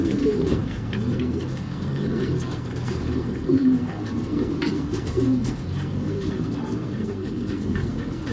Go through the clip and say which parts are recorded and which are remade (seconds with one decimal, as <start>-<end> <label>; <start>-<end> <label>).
0.0-8.3 remade